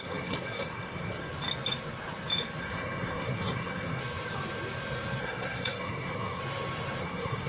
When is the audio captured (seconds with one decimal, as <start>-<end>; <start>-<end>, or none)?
1.3-2.6; 4.0-5.2; 6.4-7.0